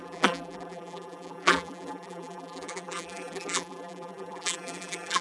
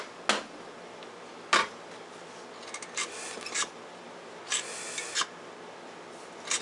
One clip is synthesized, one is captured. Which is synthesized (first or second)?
first